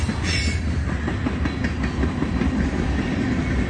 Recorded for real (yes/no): yes